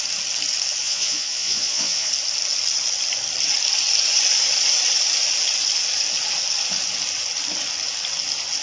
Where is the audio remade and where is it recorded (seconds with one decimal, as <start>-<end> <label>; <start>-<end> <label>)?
0.0-0.8 recorded; 0.8-2.1 remade; 2.1-8.6 recorded